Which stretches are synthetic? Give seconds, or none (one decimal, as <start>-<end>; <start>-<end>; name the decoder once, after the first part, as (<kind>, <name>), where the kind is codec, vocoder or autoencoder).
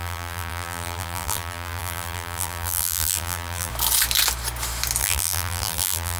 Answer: 0.0-3.7 (vocoder, BigVGAN v2); 5.0-6.2